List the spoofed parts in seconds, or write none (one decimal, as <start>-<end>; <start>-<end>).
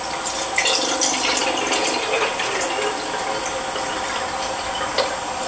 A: none